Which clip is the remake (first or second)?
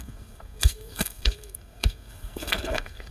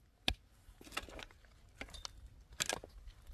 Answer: first